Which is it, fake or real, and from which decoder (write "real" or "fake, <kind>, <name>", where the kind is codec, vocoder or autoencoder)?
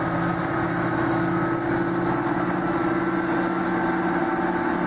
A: real